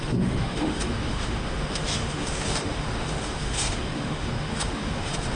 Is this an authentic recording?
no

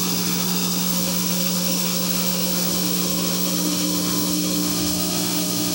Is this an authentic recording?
no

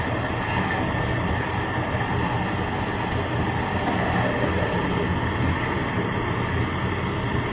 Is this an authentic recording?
yes